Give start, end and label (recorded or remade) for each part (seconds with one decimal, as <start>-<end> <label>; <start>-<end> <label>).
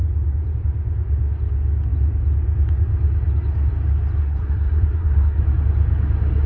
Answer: 0.0-4.2 recorded; 4.2-5.4 remade; 5.4-6.5 recorded